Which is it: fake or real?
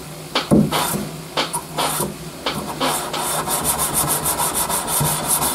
real